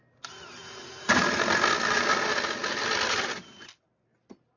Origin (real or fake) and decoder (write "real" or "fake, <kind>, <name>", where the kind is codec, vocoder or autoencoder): real